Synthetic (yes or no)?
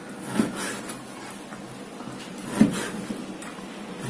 no